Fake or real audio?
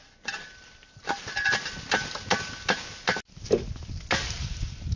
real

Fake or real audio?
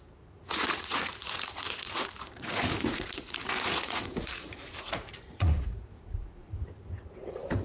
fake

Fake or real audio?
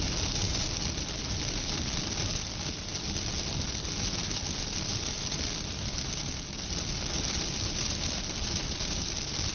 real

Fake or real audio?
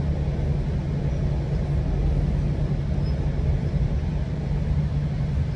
real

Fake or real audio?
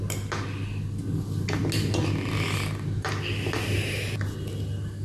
real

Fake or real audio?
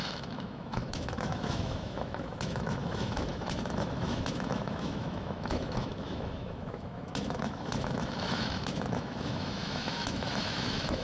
fake